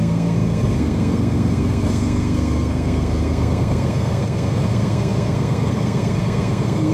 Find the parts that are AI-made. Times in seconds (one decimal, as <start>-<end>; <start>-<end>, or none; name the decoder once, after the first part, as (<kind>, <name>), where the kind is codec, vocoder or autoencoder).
0.0-6.9 (codec, SNAC)